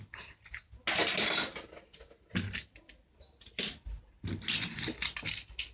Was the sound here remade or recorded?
recorded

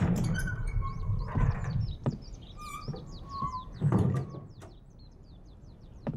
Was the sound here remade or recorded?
remade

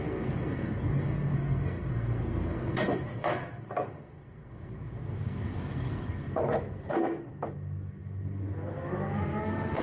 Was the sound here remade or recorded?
remade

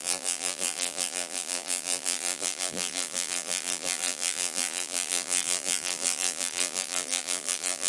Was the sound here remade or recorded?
remade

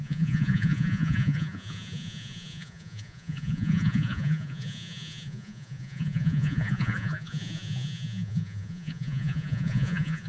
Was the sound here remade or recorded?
remade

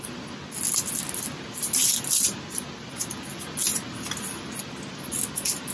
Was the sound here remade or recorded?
recorded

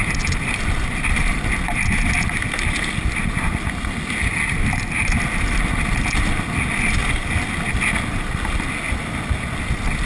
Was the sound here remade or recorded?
recorded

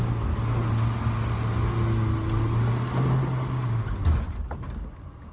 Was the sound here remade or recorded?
recorded